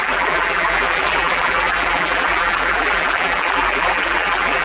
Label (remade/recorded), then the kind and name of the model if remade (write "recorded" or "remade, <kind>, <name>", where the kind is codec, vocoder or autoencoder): remade, vocoder, BigVGAN v2